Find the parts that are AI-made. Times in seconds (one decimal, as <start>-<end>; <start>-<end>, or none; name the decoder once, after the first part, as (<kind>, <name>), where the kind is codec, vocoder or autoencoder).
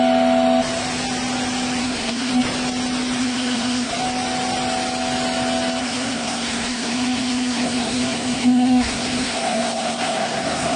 1.8-2.3 (codec, SNAC); 3.2-3.9; 5.8-10.8